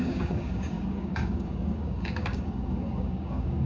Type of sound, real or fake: fake